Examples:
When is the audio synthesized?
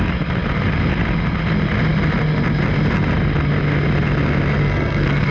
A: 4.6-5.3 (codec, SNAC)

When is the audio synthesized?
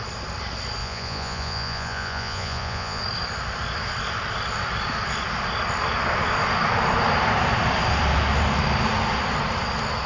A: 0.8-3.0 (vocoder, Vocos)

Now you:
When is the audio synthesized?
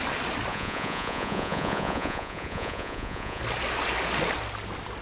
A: 0.5-3.4 (vocoder, Vocos)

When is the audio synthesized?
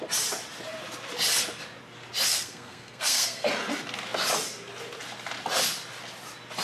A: 2.3-3.5 (codec, SNAC)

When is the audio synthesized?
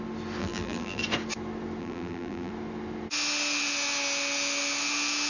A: 0.4-1.0 (vocoder, BigVGAN v2); 1.8-2.5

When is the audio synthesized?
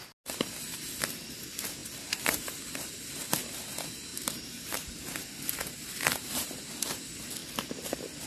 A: 1.8-2.6 (vocoder, BigVGAN v2); 4.1-6.6